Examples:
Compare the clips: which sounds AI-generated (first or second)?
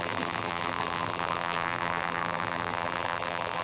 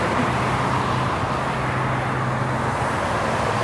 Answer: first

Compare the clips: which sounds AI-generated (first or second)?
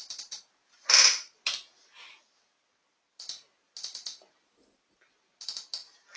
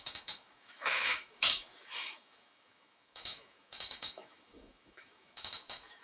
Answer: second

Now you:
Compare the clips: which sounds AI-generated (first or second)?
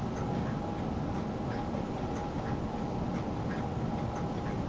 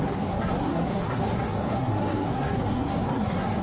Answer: second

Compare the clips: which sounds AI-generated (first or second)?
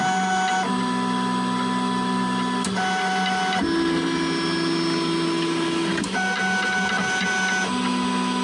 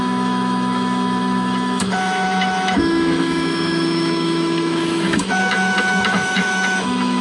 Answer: second